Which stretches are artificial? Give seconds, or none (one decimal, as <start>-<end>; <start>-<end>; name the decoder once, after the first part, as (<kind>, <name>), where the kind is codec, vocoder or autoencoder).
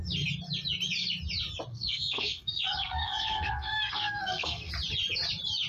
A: 1.7-4.7 (codec, SNAC)